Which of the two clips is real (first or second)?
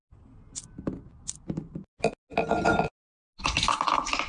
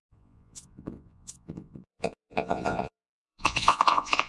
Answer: first